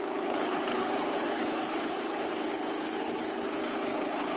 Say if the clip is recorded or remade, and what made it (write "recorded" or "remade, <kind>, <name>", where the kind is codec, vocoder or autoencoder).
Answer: remade, codec, HILCodec